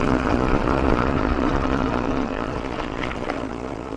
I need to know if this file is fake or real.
fake